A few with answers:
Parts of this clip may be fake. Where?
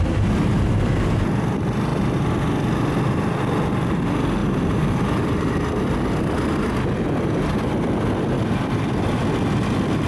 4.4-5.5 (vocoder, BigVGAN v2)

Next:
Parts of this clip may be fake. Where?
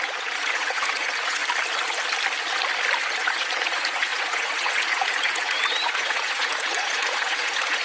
0.0-1.4 (vocoder, Vocos); 3.0-7.8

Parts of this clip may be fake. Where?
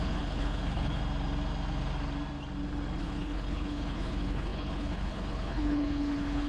0.0-1.0 (codec, HILCodec); 3.0-6.5